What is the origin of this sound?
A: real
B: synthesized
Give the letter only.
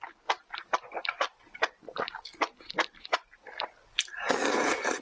A